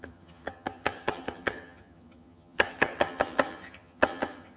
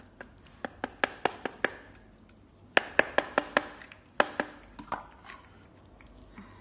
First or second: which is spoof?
first